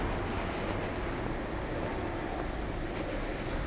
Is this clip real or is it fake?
real